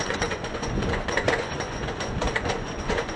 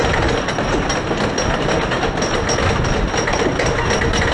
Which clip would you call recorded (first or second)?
second